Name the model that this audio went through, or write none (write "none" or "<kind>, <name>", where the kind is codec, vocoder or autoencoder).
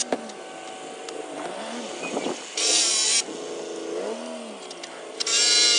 none